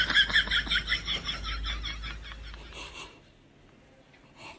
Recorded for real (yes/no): yes